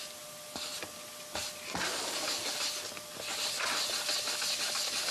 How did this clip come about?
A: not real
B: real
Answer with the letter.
B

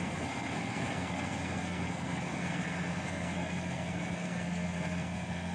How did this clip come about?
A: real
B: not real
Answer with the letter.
B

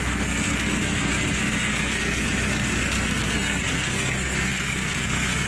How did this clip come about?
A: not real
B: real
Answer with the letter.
A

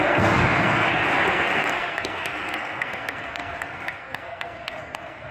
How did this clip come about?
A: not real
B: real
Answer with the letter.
A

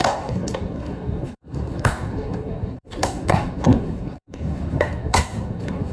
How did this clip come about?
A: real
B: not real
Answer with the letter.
B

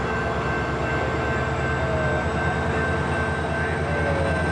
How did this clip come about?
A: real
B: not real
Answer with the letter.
A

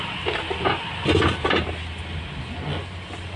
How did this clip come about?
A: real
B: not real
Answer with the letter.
A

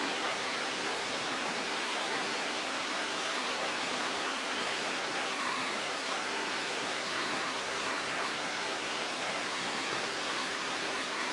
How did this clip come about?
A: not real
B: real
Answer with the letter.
A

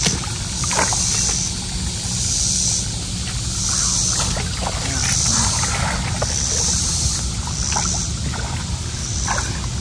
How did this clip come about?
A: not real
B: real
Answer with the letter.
B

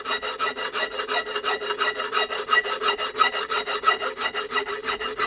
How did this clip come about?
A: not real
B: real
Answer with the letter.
B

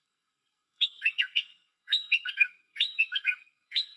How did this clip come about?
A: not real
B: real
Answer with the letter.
A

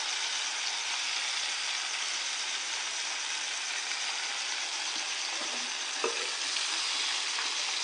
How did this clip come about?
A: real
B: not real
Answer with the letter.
A